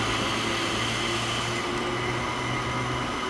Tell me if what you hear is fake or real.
real